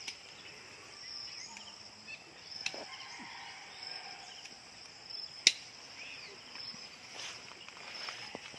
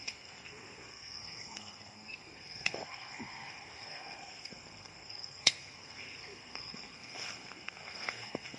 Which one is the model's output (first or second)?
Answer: second